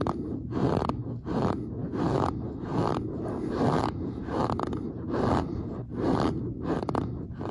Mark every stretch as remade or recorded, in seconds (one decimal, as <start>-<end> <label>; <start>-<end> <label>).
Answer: 0.0-7.5 remade